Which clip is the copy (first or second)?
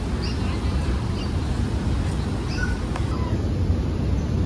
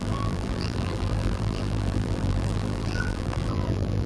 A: second